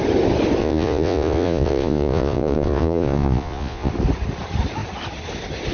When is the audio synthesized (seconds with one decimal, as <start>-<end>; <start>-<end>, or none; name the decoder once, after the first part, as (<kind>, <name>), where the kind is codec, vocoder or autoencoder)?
0.6-3.9 (vocoder, Vocos)